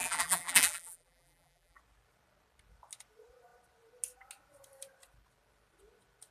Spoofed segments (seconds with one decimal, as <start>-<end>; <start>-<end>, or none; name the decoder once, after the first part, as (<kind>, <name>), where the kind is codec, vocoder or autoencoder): 0.0-1.8 (vocoder, BigVGAN v2)

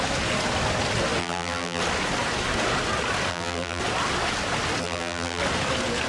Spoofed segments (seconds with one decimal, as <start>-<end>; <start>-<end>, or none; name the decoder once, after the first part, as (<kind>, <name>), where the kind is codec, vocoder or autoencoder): 1.2-1.8 (vocoder, BigVGAN v2); 3.3-3.8; 4.8-5.4

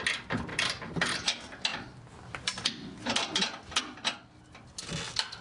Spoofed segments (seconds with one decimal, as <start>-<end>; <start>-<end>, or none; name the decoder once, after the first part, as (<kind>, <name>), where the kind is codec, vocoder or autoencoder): 0.5-1.0 (vocoder, BigVGAN v2)

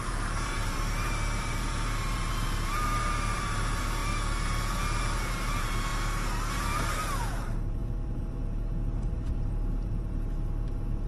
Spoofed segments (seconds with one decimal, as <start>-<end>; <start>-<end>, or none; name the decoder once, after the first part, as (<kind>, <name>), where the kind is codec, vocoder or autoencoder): 0.0-5.9 (vocoder, BigVGAN v2); 6.5-11.1